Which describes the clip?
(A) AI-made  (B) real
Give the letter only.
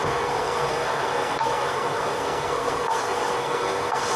A